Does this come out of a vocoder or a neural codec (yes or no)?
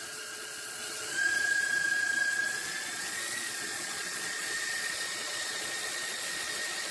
yes